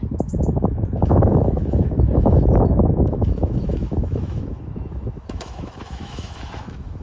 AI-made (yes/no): yes